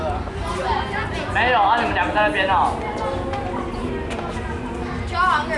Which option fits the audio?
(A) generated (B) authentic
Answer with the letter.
B